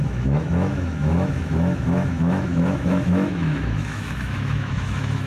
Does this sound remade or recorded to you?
remade